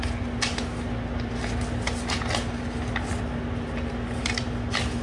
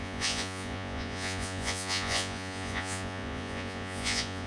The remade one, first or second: second